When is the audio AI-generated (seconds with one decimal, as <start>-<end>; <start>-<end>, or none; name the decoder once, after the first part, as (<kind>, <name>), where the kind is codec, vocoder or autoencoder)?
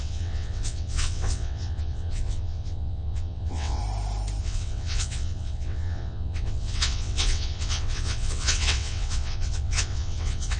0.0-3.8 (vocoder, WaveNeXt); 4.4-10.6